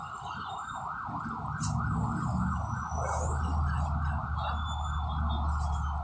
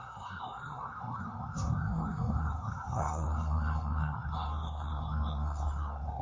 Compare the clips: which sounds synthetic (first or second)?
second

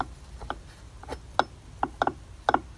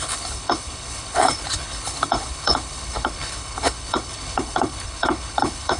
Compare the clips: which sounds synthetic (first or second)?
second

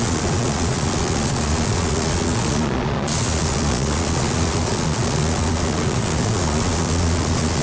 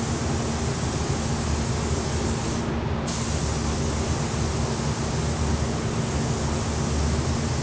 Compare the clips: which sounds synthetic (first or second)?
first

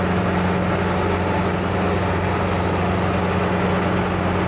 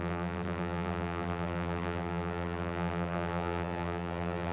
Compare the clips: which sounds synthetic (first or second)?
second